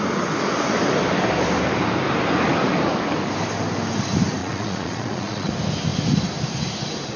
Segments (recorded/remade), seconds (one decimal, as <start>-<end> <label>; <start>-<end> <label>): 0.0-4.4 recorded; 4.4-5.5 remade; 5.5-7.2 recorded